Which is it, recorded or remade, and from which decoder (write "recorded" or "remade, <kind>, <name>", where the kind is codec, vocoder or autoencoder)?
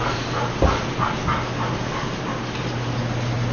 recorded